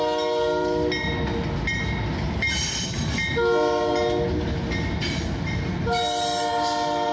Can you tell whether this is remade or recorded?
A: recorded